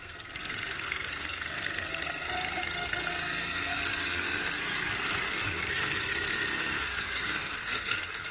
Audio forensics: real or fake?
fake